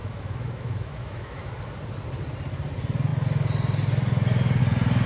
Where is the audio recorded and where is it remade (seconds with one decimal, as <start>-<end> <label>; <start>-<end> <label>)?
0.0-1.5 remade; 1.5-5.1 recorded